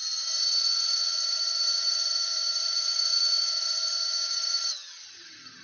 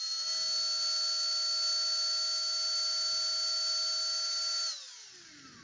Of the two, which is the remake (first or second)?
first